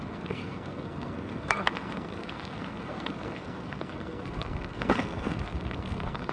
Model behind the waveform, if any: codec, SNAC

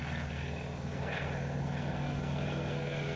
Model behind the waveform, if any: codec, SNAC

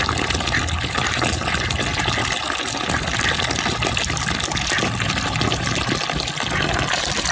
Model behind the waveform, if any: none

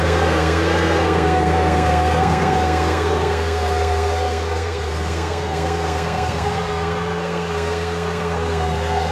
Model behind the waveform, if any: codec, SNAC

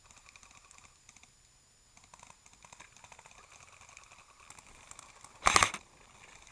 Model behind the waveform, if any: none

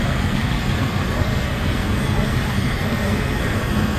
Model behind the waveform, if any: codec, SNAC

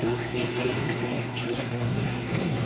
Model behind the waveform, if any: codec, SNAC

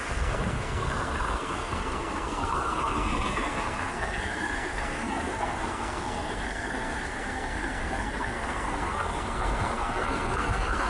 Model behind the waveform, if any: codec, SNAC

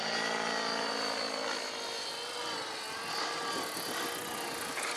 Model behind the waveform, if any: none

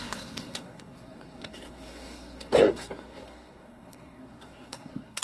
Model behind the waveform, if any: codec, SNAC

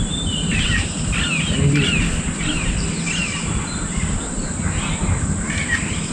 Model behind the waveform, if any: none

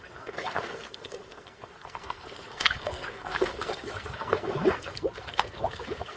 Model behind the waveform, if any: codec, SNAC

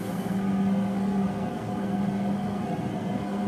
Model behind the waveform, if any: codec, SNAC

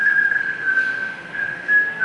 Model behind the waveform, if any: codec, SNAC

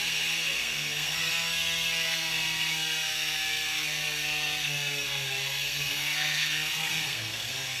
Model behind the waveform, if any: codec, SNAC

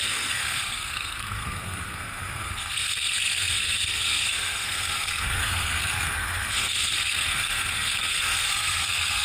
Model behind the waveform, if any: codec, SNAC